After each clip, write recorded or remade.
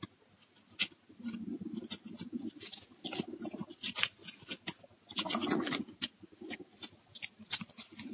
recorded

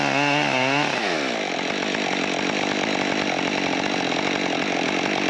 recorded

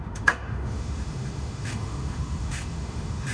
remade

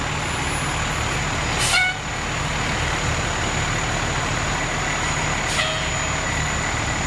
recorded